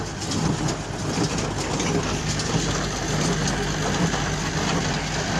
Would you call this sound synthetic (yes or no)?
no